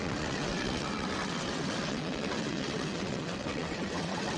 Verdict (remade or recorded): remade